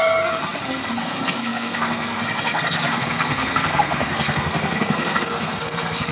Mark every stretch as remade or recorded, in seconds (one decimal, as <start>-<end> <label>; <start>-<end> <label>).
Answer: 0.0-6.1 remade